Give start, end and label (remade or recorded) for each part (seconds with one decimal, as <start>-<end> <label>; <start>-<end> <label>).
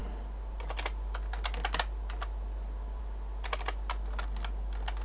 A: 0.0-5.0 recorded